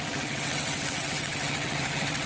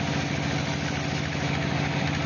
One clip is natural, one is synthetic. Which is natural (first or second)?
second